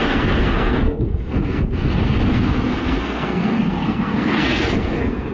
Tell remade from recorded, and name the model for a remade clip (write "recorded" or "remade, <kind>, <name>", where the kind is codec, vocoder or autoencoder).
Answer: remade, codec, SNAC